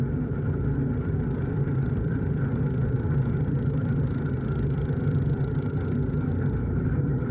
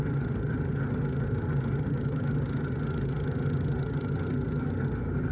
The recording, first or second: second